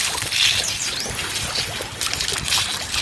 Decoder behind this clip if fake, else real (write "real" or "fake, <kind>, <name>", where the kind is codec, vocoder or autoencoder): real